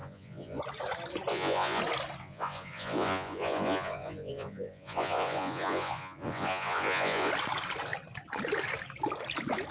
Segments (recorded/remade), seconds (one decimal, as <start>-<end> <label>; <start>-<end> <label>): 0.0-0.6 remade; 0.6-1.3 recorded; 1.3-1.8 remade; 1.8-2.2 recorded; 2.2-7.3 remade; 7.3-9.7 recorded